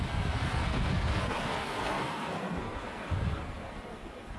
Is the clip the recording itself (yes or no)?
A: no